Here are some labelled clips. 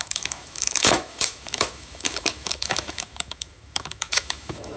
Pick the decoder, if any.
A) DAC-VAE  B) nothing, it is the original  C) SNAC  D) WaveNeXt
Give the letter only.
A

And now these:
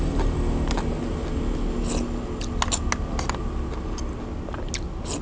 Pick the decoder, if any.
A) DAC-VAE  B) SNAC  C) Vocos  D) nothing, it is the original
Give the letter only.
D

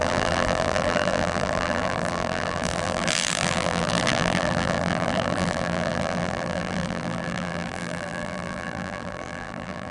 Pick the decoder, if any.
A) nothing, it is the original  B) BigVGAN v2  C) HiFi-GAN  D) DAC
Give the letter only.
B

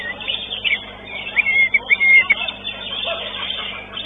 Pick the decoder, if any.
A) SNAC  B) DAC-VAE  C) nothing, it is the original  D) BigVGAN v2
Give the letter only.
D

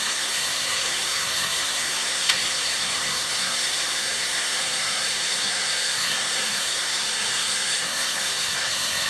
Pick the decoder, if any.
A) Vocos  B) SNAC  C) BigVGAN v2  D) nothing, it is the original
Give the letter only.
B